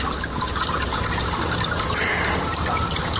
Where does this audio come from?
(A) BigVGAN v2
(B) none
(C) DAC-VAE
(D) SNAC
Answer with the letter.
B